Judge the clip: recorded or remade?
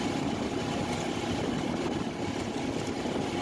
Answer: recorded